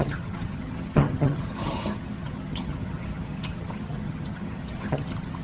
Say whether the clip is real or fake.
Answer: fake